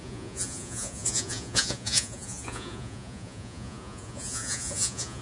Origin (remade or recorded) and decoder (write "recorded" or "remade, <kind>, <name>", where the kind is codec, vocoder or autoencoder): remade, vocoder, Vocos